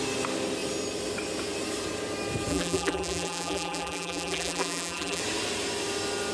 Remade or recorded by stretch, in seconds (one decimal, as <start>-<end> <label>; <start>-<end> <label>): 0.0-2.5 recorded; 2.5-5.2 remade; 5.2-6.3 recorded